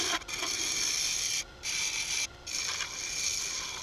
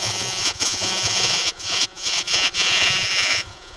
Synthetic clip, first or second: second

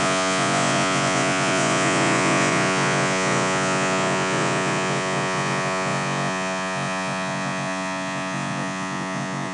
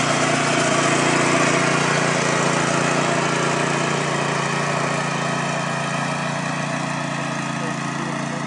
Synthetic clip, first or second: first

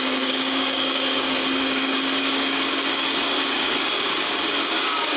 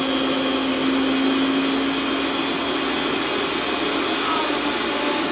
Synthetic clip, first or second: first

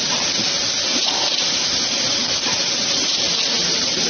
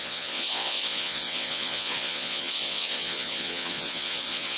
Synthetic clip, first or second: second